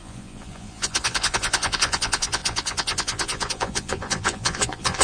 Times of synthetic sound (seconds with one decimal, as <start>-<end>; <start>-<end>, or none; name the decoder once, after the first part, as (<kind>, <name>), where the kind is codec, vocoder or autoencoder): 0.0-5.0 (vocoder, Vocos)